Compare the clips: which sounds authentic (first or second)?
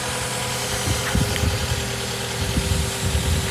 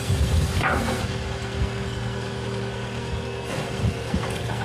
first